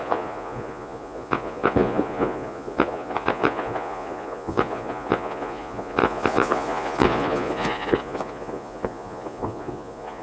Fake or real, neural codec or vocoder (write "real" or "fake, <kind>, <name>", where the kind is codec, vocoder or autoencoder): fake, vocoder, Vocos